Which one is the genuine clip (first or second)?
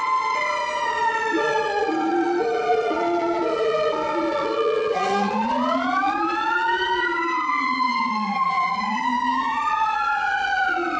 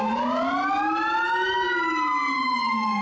second